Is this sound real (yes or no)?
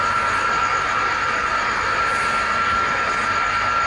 yes